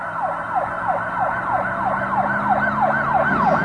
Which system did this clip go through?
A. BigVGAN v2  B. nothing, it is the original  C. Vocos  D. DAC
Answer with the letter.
B